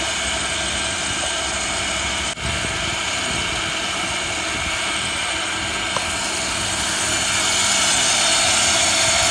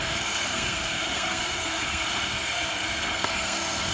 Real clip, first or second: first